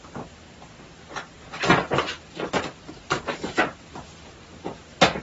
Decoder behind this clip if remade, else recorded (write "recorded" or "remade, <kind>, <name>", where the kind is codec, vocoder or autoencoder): recorded